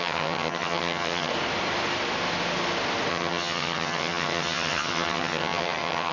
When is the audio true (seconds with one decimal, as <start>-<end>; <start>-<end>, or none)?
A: 1.3-3.1